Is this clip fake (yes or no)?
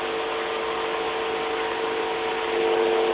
no